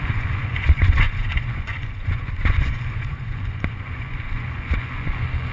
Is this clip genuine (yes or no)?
no